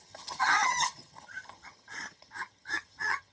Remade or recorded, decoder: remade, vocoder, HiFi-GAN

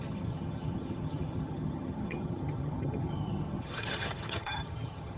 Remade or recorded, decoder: remade, vocoder, HiFi-GAN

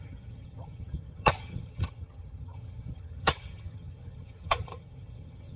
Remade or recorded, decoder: remade, vocoder, HiFi-GAN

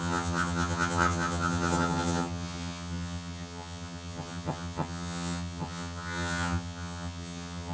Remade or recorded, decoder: remade, vocoder, HiFi-GAN